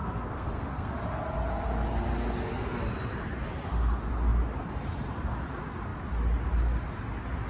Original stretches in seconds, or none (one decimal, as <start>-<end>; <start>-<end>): 0.9-7.5